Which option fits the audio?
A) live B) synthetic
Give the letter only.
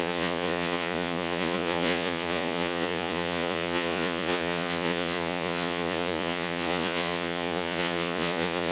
B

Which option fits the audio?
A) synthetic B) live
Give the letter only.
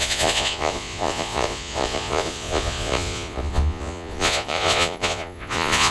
A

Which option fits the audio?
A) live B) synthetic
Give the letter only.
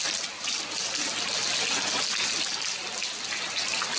A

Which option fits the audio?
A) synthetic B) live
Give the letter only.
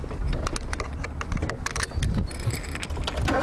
B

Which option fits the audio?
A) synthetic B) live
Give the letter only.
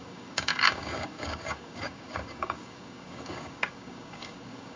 A